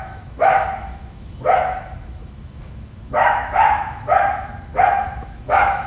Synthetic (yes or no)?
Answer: yes